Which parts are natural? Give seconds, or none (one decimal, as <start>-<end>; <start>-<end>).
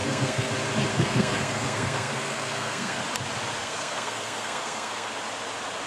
0.5-0.9; 3.0-3.6; 5.1-5.9